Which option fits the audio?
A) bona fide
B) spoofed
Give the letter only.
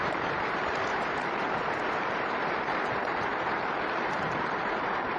B